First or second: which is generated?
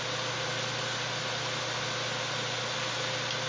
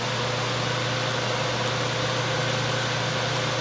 second